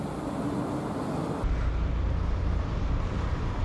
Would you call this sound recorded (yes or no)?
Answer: yes